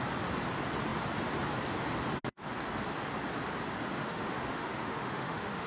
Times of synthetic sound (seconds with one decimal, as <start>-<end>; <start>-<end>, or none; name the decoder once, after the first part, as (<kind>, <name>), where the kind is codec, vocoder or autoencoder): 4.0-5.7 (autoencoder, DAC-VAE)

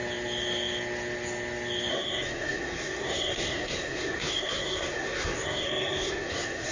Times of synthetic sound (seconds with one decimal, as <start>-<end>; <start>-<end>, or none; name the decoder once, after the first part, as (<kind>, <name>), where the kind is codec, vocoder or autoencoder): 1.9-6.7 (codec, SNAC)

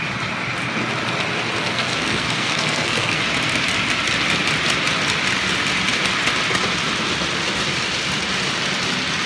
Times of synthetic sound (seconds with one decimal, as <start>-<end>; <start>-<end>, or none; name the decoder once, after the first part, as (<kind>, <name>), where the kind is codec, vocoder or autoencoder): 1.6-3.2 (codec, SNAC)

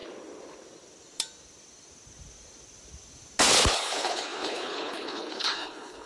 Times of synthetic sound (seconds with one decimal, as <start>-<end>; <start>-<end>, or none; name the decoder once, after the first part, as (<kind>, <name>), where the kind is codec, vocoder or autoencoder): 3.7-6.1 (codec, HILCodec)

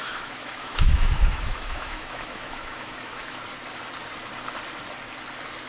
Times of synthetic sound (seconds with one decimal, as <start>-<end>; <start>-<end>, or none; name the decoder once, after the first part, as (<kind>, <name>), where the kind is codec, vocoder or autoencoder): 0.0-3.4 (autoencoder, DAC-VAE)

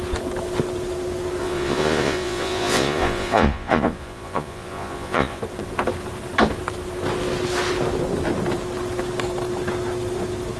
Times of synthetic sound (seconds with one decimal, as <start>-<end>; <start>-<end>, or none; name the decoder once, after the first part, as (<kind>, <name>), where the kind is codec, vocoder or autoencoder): 1.4-5.4 (vocoder, Vocos)

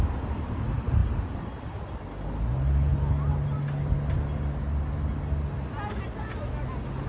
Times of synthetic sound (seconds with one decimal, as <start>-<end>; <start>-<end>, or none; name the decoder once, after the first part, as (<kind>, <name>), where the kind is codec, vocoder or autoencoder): none